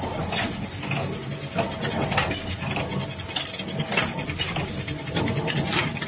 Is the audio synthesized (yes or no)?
no